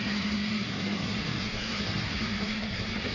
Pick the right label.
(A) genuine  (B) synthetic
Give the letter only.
B